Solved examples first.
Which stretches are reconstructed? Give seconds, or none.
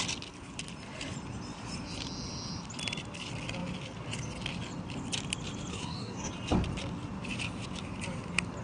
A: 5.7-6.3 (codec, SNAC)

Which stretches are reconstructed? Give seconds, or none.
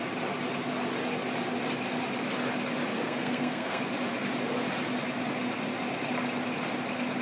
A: 2.9-3.8 (codec, SNAC)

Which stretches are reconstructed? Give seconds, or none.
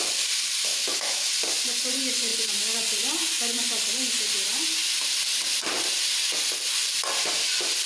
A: 0.7-1.3 (autoencoder, DAC-VAE)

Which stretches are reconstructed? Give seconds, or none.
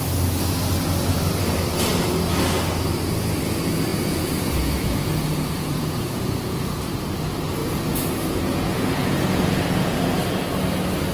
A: 3.9-6.8 (vocoder, Vocos); 7.6-10.2